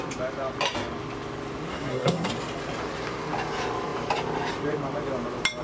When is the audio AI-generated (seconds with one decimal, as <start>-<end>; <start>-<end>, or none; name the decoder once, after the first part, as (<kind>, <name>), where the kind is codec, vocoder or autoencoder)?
1.7-2.3 (codec, SNAC)